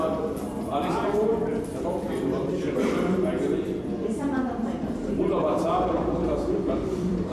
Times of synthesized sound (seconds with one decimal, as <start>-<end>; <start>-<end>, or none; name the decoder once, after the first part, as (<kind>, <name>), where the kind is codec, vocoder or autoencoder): 0.0-7.3 (vocoder, BigVGAN v2)